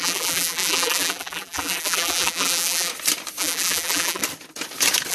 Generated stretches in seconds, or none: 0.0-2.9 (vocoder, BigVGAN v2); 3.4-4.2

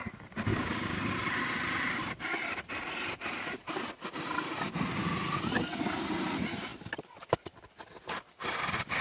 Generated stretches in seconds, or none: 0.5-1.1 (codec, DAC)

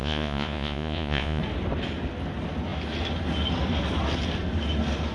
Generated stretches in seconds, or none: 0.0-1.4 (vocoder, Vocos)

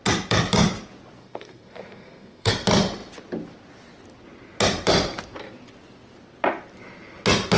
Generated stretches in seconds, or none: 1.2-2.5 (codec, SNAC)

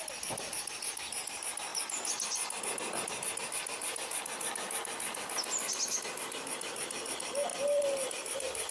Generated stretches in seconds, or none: 7.5-8.7 (vocoder, BigVGAN v2)

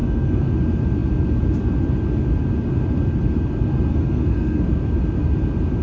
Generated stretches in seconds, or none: 0.0-0.5 (codec, SNAC); 3.9-4.6

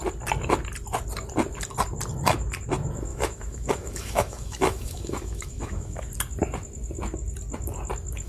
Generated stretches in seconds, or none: 3.1-6.1 (autoencoder, DAC-VAE)

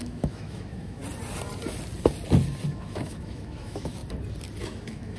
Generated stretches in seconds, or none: 0.0-1.0 (autoencoder, DAC-VAE); 2.7-4.0; 4.6-5.2